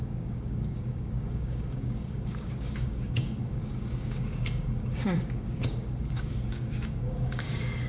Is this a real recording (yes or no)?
no